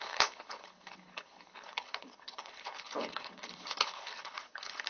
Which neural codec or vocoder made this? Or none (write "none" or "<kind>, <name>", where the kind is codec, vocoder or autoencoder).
codec, HILCodec